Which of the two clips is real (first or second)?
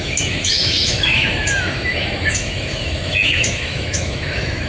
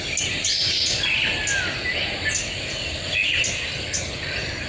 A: second